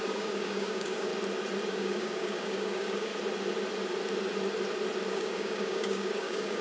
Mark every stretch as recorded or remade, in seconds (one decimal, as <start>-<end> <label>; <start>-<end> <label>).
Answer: 0.0-1.1 remade; 1.1-1.7 recorded; 1.7-3.1 remade; 3.1-5.1 recorded; 5.1-6.6 remade